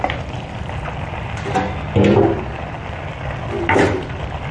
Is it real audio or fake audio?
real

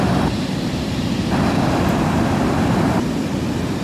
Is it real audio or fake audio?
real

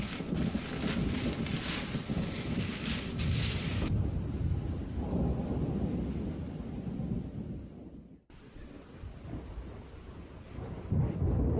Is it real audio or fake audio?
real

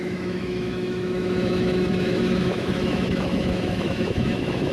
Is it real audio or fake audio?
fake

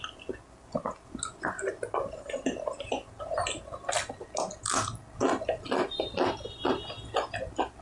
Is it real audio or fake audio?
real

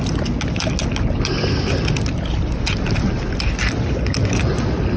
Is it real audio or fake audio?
real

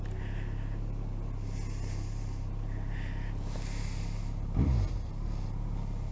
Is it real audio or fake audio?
real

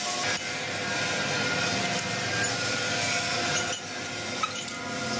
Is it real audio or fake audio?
real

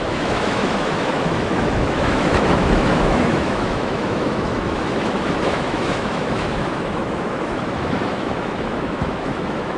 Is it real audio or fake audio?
fake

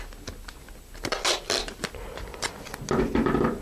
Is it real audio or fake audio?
real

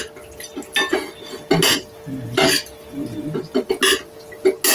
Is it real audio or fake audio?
real